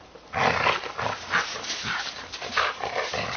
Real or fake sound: real